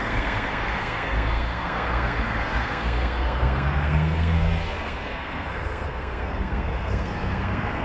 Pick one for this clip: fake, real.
fake